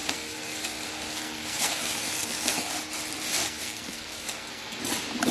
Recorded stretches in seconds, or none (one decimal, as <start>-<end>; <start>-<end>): 2.7-3.4; 4.8-5.3